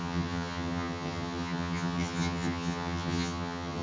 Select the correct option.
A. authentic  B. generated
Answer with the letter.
B